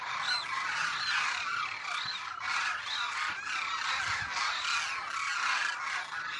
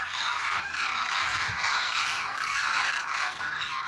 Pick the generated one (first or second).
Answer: second